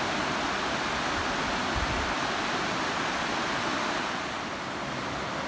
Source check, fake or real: real